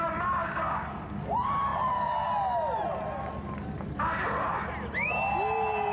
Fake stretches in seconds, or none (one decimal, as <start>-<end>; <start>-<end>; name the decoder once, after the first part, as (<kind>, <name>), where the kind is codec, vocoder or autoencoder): none

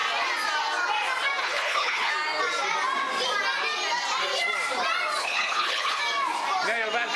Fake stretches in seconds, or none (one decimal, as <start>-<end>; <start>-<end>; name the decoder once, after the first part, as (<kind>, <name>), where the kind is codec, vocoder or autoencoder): 1.4-2.1 (codec, HILCodec); 5.2-6.0

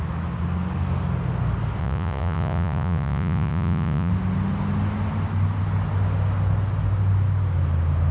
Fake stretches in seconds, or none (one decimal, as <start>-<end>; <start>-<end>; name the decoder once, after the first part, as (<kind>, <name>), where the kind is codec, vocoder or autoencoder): 1.8-4.1 (vocoder, Vocos)

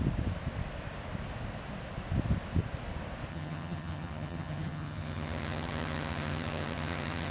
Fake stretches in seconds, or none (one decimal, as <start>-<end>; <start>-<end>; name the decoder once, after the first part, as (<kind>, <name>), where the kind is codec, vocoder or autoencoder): 3.3-7.3 (vocoder, HiFi-GAN)

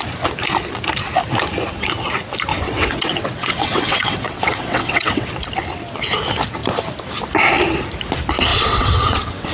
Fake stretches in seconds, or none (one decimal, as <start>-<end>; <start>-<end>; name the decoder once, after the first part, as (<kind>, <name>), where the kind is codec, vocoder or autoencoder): 2.5-5.3 (vocoder, WaveNeXt); 8.5-9.5

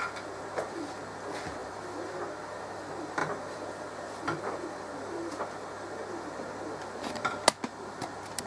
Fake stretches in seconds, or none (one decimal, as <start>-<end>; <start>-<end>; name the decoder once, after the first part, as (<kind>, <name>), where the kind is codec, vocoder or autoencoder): 3.2-5.4 (vocoder, BigVGAN v2)

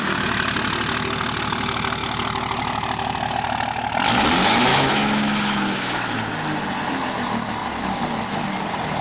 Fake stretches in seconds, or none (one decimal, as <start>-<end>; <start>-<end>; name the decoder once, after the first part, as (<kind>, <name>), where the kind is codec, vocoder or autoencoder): 4.7-6.2 (autoencoder, DAC-VAE)